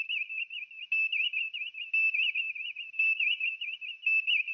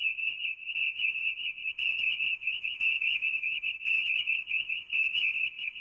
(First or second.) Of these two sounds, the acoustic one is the first